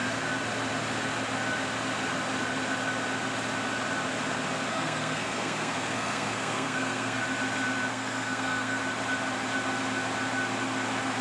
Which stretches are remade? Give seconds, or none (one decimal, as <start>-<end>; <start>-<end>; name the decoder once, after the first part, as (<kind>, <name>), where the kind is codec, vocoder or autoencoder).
4.7-7.2 (codec, SNAC); 7.9-8.8